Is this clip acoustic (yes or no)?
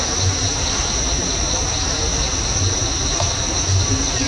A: yes